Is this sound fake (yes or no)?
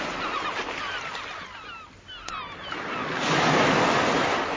no